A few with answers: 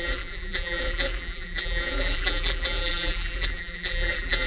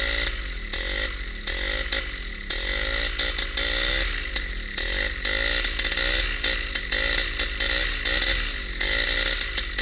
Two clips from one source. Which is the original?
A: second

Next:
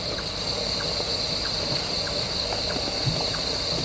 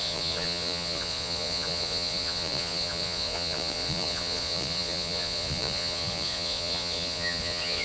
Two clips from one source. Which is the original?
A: first